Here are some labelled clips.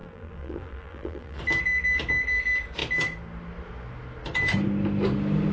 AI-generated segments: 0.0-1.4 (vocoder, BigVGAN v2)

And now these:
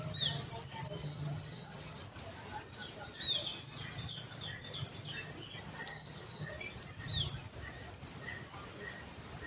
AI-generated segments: 1.0-2.0 (vocoder, HiFi-GAN); 5.9-6.5

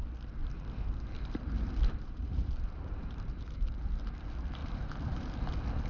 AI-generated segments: 0.4-3.9 (vocoder, BigVGAN v2); 4.6-5.4

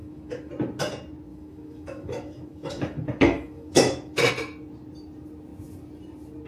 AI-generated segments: 0.0-0.5 (autoencoder, DAC-VAE); 1.3-4.3

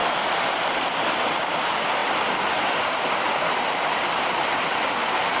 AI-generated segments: none

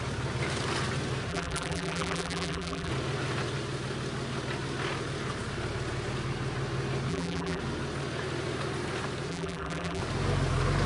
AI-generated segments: 1.3-2.9 (vocoder, BigVGAN v2); 7.1-7.6; 9.3-10.0

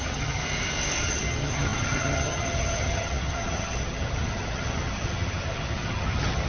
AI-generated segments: 0.0-0.4 (vocoder, HiFi-GAN); 1.0-6.5